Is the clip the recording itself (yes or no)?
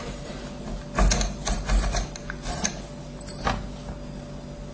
yes